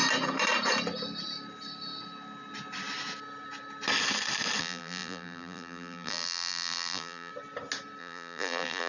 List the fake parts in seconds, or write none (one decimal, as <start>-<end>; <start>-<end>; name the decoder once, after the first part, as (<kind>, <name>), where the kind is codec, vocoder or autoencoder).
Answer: 4.6-7.3 (vocoder, BigVGAN v2); 8.0-8.9